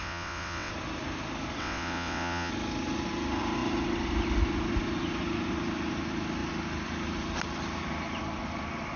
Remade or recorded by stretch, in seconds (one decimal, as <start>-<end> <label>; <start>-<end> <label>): 0.0-0.7 remade; 0.7-1.6 recorded; 1.6-2.5 remade; 2.5-9.0 recorded